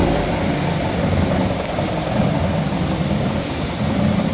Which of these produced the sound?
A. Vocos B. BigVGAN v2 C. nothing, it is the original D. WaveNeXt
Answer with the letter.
B